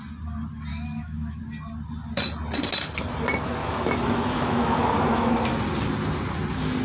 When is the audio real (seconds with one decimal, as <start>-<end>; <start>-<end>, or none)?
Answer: 0.0-0.7; 1.4-3.6; 5.4-6.8

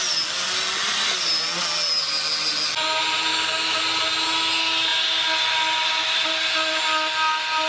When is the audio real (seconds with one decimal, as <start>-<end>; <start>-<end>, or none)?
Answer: 0.0-3.3; 3.8-7.7

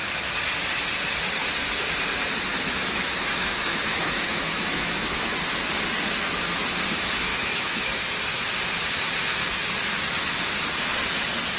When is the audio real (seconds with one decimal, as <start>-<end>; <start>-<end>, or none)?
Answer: 0.0-2.5; 5.3-7.3; 8.5-11.6

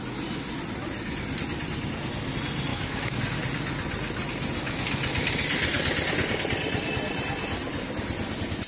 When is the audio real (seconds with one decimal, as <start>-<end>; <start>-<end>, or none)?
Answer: 0.0-2.7; 3.2-8.7

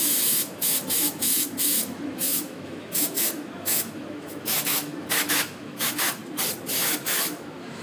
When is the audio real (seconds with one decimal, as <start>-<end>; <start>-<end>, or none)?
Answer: 6.2-6.7

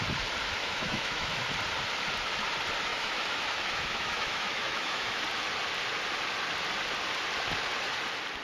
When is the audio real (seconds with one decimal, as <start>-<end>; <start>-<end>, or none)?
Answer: 0.0-0.6; 1.4-2.9; 5.2-8.4